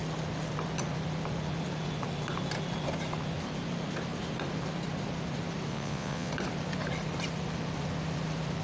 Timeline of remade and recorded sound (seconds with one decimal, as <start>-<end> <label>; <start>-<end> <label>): 0.0-5.7 recorded; 5.7-6.3 remade; 6.3-8.6 recorded